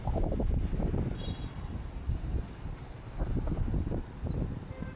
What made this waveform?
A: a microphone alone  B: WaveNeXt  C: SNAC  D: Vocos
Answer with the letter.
A